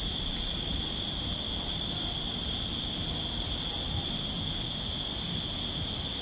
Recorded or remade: recorded